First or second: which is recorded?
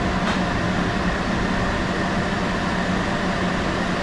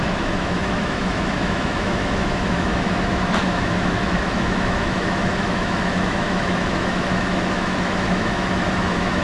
first